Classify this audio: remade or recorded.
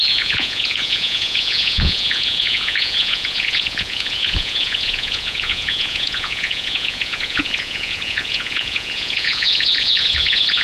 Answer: remade